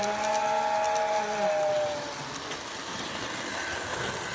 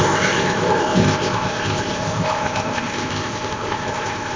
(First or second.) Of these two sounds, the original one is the first